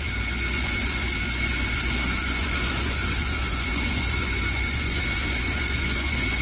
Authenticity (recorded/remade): remade